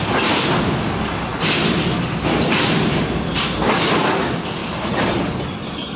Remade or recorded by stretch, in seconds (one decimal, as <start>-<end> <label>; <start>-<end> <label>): 0.0-4.6 recorded; 4.6-5.3 remade; 5.3-6.0 recorded